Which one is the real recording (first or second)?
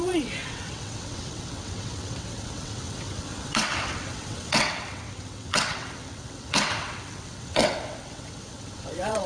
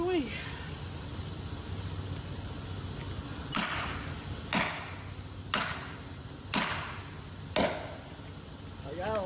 second